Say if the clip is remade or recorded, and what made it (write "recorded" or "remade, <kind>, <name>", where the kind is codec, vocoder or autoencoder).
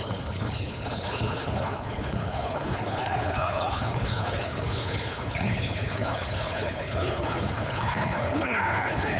remade, codec, HILCodec